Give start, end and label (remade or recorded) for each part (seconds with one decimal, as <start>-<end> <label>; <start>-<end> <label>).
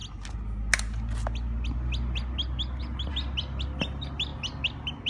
0.0-5.1 recorded